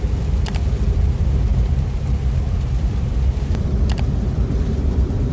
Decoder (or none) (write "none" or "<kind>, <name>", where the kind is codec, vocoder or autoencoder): vocoder, BigVGAN v2